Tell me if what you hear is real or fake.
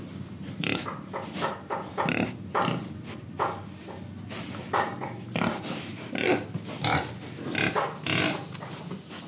real